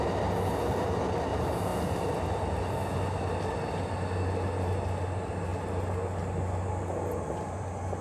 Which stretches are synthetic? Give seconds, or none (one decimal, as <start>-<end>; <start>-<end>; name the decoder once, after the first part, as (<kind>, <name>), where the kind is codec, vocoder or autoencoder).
none